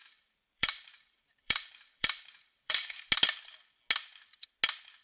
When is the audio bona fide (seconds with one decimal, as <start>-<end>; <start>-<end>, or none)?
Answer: 3.0-5.0